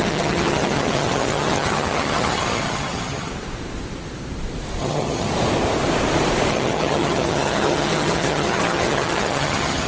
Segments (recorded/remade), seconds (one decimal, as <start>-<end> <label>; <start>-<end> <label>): 0.0-3.3 remade; 3.3-4.8 recorded; 4.8-5.3 remade; 5.3-6.5 recorded; 6.5-9.9 remade